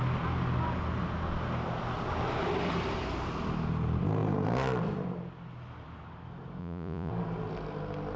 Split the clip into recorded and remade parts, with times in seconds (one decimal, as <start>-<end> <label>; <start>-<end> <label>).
0.0-6.6 recorded; 6.6-7.1 remade; 7.1-8.2 recorded